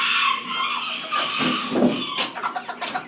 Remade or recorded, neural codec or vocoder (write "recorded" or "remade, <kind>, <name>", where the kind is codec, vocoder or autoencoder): recorded